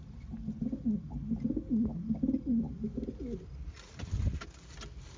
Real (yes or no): yes